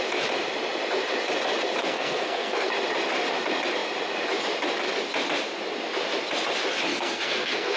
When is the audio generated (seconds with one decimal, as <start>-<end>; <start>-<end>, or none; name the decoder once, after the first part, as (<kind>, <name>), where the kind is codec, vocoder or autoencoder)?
1.8-2.7 (codec, SNAC); 6.9-7.8